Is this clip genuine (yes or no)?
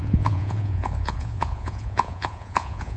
no